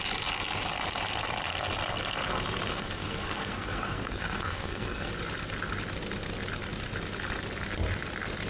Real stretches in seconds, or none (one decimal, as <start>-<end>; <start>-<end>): 0.0-2.7; 5.1-8.5